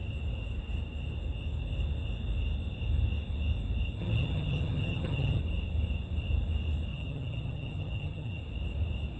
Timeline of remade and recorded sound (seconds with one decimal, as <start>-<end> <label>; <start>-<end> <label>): 0.0-4.0 recorded; 4.0-5.4 remade; 5.4-6.9 recorded; 6.9-8.4 remade; 8.4-9.2 recorded